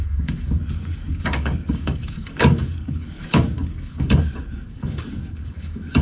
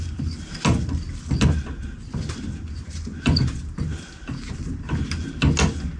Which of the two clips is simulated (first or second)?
first